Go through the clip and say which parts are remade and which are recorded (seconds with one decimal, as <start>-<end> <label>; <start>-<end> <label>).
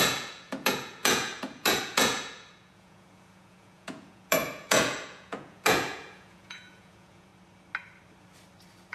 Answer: 0.0-7.3 remade; 7.3-8.9 recorded